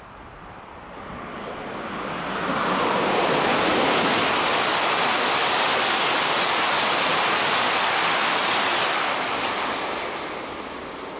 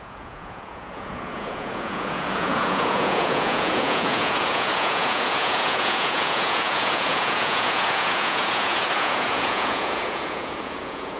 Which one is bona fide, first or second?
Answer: first